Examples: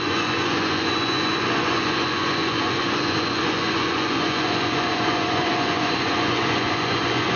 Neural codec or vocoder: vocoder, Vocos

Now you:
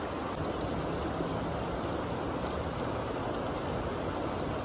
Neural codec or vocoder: none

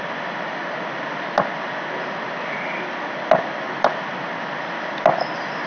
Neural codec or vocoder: none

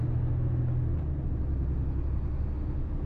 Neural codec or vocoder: none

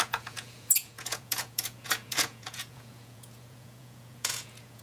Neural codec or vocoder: vocoder, Vocos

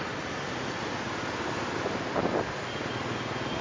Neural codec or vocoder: none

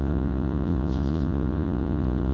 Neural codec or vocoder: vocoder, Vocos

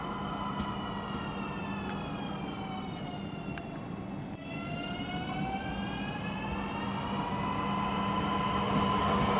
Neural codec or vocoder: none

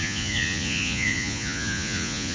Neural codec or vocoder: vocoder, Vocos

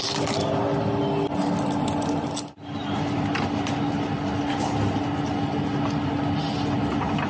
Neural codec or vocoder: none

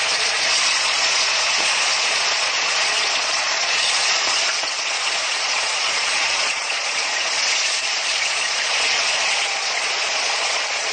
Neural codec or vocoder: vocoder, Vocos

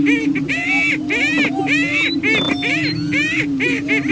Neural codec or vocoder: none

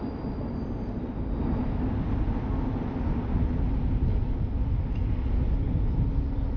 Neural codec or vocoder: none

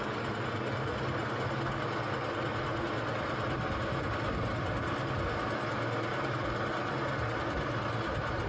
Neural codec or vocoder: none